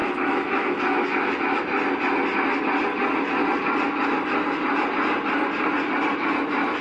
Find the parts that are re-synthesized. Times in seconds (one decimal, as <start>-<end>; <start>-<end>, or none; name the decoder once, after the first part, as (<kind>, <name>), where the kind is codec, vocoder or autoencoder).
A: 0.0-1.6 (autoencoder, DAC-VAE)

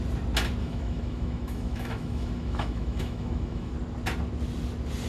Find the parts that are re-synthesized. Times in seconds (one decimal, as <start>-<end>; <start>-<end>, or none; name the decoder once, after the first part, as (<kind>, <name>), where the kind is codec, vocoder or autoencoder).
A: 0.6-3.7 (autoencoder, DAC-VAE)

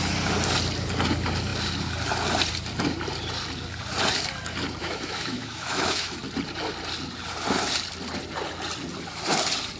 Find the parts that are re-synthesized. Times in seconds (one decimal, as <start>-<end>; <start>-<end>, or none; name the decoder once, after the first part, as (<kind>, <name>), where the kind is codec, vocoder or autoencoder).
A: 4.8-6.2 (autoencoder, DAC-VAE)

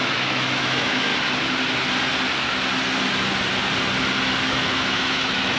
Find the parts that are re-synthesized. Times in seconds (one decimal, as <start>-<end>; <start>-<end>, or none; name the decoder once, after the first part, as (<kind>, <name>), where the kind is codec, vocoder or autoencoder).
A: 0.0-1.1 (autoencoder, DAC-VAE); 4.5-5.6

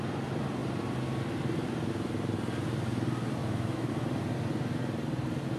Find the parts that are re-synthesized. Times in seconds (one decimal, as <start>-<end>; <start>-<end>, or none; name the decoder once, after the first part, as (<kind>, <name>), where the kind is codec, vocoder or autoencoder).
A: 3.4-3.9 (autoencoder, DAC-VAE)

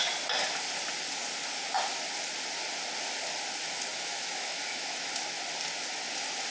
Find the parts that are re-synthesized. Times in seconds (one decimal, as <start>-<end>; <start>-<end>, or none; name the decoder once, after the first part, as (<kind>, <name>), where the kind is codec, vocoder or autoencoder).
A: 3.9-5.1 (autoencoder, DAC-VAE)